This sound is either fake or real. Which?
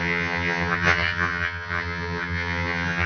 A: fake